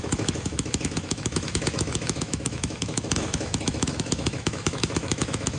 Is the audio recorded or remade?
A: remade